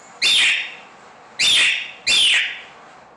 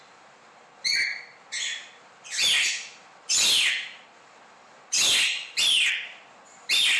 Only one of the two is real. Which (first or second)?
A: first